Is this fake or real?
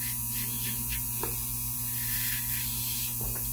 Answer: real